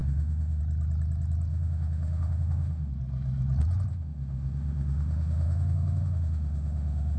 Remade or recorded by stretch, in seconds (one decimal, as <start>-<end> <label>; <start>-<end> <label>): 0.0-0.6 remade; 0.6-1.5 recorded; 1.5-2.9 remade; 2.9-3.9 recorded; 3.9-7.2 remade